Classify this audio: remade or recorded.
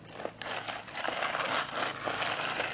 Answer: recorded